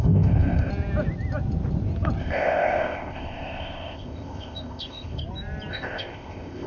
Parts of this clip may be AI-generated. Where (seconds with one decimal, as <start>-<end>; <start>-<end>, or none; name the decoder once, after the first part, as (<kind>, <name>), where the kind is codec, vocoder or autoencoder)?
0.0-0.7 (codec, ZipCodec); 2.2-5.2; 5.7-6.7